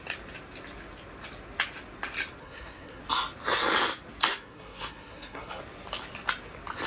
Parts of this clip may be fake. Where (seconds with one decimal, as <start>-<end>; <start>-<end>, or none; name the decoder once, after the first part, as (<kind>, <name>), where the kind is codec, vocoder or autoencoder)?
2.4-3.0 (codec, SNAC); 4.3-5.6